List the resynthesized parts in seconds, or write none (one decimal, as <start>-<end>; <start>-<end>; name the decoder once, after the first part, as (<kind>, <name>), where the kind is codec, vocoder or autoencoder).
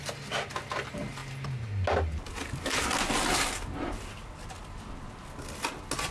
none